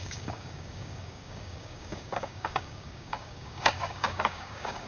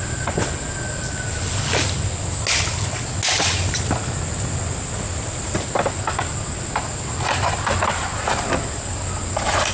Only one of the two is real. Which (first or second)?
second